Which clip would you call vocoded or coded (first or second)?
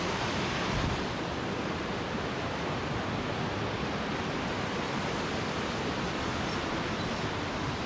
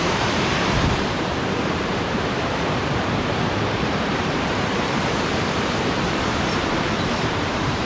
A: second